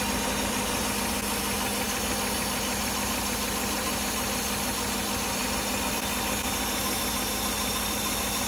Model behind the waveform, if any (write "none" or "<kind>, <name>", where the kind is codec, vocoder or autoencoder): none